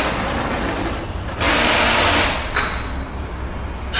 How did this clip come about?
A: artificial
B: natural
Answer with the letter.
B